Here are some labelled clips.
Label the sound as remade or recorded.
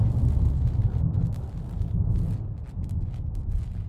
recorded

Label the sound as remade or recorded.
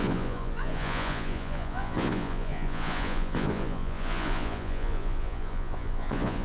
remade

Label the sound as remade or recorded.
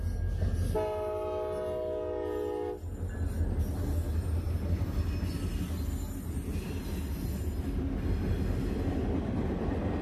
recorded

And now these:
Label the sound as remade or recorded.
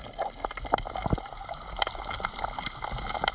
recorded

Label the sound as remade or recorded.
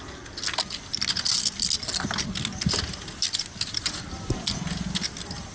recorded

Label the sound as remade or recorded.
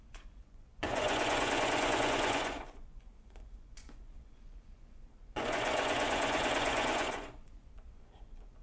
remade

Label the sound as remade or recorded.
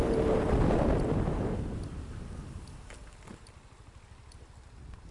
recorded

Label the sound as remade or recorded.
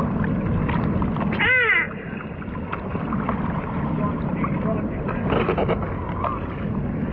recorded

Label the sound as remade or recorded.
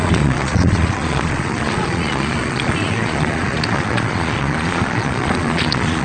remade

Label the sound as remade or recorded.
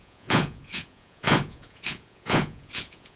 remade